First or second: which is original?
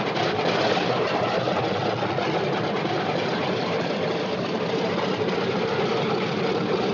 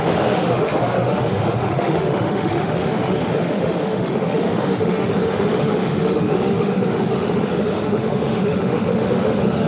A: first